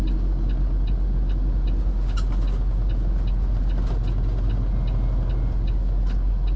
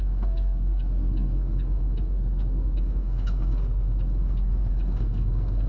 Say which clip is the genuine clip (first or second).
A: first